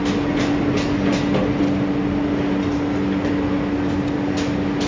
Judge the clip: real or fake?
real